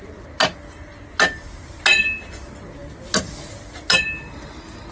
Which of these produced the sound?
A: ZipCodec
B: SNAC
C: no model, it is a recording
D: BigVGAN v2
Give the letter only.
C